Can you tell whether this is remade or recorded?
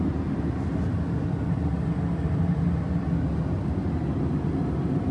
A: recorded